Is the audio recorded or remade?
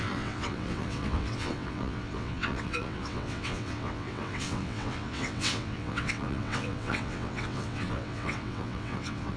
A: remade